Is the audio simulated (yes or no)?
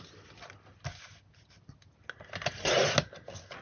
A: no